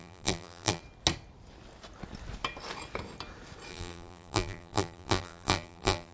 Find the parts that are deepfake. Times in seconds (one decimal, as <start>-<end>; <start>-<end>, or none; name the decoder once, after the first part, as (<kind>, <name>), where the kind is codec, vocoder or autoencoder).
0.0-0.8 (vocoder, BigVGAN v2); 3.7-6.1